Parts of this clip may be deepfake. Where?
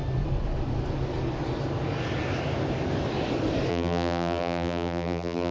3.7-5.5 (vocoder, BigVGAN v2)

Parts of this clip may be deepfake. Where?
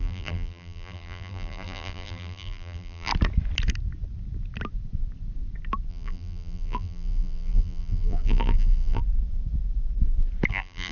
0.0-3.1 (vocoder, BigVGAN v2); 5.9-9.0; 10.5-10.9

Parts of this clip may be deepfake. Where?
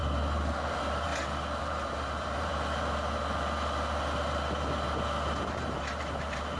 0.7-1.1 (vocoder, BigVGAN v2); 1.6-2.5; 5.6-6.6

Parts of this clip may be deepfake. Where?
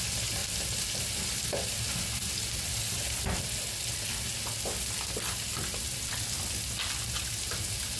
0.4-3.0 (vocoder, BigVGAN v2); 5.5-6.1